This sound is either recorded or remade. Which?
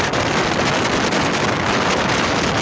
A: recorded